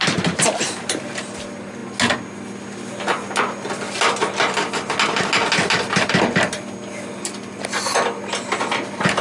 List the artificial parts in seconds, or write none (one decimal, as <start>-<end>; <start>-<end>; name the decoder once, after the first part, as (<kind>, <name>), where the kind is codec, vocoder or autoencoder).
none